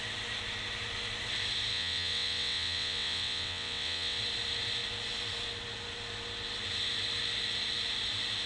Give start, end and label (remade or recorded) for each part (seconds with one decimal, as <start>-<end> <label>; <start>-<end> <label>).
0.0-1.7 recorded; 1.7-4.2 remade; 4.2-8.5 recorded